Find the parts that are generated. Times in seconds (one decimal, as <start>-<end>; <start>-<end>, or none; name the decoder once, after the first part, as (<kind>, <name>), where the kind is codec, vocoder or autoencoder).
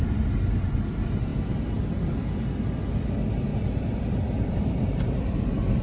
3.5-5.0 (vocoder, BigVGAN v2)